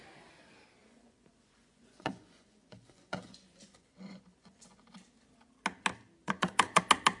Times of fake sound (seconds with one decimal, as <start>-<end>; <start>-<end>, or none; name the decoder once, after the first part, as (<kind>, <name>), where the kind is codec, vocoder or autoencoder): 0.8-4.8 (vocoder, Vocos); 6.2-6.8